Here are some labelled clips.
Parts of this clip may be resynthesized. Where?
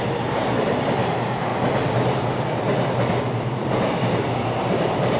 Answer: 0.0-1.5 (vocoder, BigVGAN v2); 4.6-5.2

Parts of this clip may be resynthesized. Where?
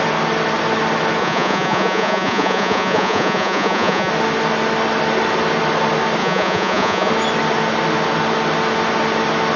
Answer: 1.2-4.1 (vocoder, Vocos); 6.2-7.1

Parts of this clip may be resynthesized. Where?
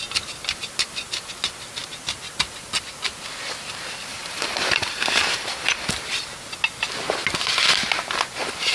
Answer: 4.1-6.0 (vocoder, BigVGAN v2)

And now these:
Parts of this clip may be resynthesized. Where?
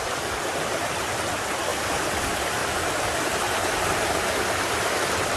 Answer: 1.7-2.2 (vocoder, BigVGAN v2); 2.6-4.3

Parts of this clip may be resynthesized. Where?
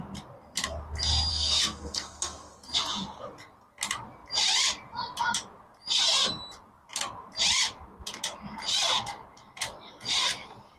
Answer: 1.3-2.5 (codec, SNAC)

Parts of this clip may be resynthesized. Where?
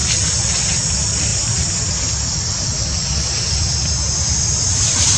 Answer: none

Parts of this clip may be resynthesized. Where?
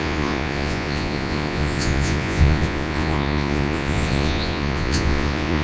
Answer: 0.0-5.6 (vocoder, Vocos)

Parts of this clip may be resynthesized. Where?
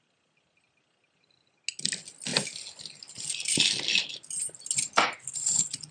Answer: none